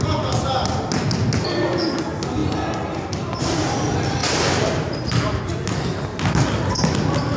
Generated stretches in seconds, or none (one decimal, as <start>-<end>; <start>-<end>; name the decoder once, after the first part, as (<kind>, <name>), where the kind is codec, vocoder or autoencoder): 4.2-5.4 (vocoder, BigVGAN v2)